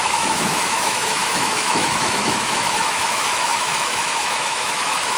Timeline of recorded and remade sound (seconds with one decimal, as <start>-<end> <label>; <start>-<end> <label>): 0.0-5.2 remade